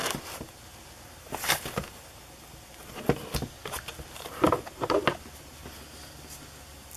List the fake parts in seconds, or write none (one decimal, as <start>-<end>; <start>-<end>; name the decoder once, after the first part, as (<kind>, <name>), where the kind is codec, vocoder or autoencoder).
none